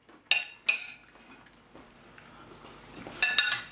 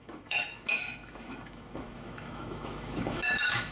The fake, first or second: second